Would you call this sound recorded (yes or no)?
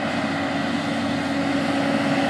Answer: yes